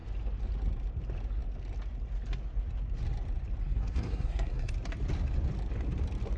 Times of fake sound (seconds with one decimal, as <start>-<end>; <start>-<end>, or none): 3.6-4.7